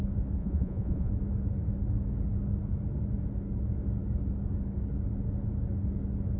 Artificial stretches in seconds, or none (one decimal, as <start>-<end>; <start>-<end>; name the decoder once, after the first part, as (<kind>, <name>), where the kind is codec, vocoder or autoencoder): 0.4-1.1 (vocoder, Vocos)